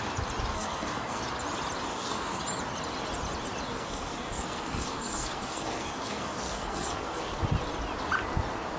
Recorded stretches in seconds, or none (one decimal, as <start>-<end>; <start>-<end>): 0.0-0.5; 1.2-1.9; 2.4-3.7; 7.4-8.8